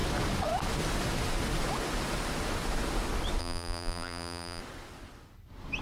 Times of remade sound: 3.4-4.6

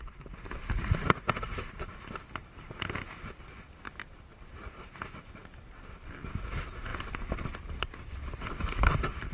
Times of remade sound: 6.9-8.4